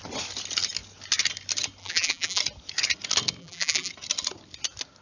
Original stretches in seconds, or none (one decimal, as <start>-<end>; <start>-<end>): 0.0-1.8; 2.4-3.4; 3.9-5.0